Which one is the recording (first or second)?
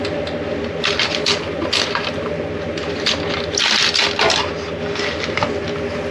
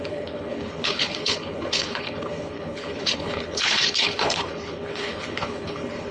first